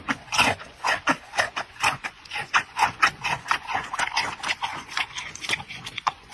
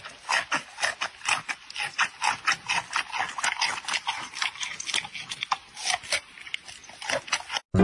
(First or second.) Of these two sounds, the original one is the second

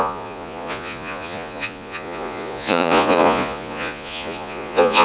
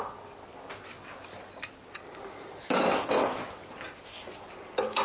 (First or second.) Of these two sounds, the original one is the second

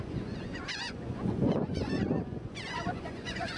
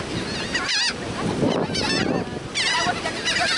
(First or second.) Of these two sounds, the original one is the second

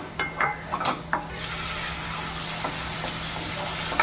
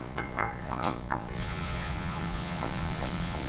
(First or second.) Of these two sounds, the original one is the first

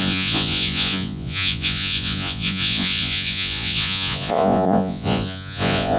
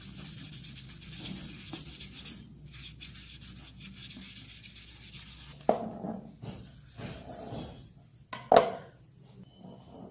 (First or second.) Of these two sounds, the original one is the second